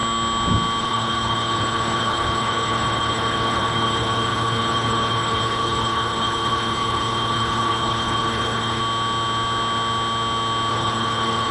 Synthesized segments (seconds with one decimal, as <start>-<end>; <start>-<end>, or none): 0.8-8.8; 10.7-11.5